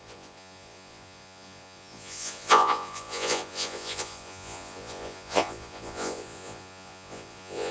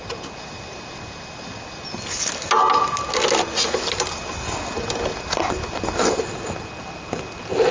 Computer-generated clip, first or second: first